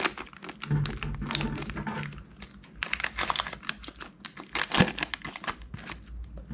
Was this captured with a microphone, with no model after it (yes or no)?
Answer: yes